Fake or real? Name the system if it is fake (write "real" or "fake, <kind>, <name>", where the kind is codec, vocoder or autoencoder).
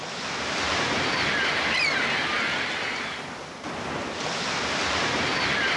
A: real